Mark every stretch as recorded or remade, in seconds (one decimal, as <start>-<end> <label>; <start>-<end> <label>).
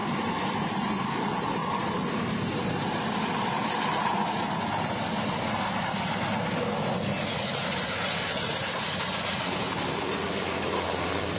0.0-1.6 recorded; 1.6-2.3 remade; 2.3-11.4 recorded